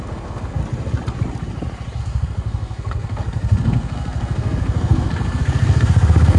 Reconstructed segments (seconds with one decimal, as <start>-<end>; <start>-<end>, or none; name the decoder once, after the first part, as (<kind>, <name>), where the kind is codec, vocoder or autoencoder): 0.0-0.6 (codec, SNAC); 2.0-6.4